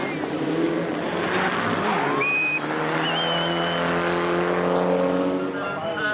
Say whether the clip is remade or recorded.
recorded